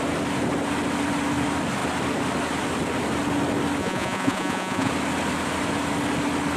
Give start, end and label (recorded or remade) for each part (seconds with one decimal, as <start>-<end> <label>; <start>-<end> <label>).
0.0-3.8 recorded; 3.8-4.9 remade; 4.9-6.6 recorded